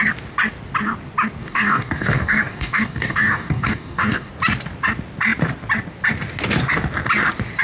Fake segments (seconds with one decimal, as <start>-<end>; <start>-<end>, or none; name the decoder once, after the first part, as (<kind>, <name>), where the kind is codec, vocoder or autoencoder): 1.4-4.3 (codec, DAC)